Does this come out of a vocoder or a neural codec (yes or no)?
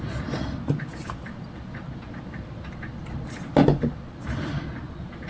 no